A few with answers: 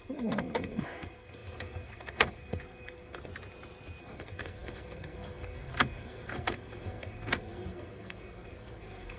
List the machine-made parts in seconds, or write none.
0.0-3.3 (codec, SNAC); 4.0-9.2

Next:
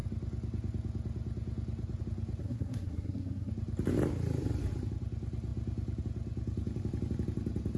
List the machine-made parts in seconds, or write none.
2.4-3.5 (codec, SNAC)

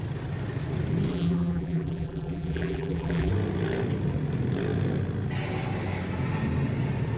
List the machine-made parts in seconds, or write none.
1.1-3.3 (vocoder, BigVGAN v2)

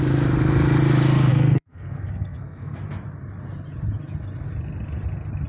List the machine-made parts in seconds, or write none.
1.3-2.8 (codec, SNAC)

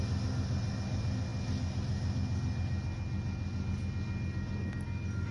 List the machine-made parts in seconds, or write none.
none

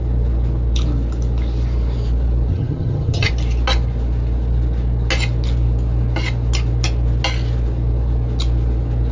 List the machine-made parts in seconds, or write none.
2.5-3.3 (vocoder, HiFi-GAN)